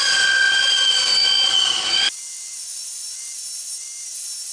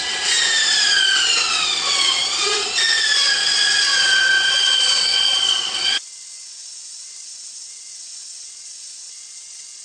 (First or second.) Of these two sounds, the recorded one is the first